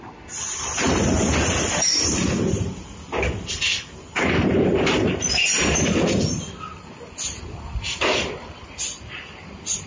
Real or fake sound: real